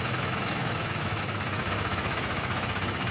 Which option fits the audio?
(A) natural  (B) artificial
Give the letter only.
B